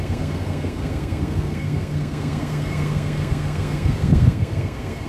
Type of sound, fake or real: fake